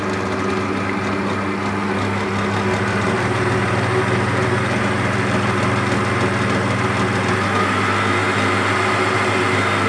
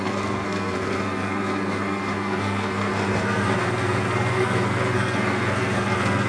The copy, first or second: second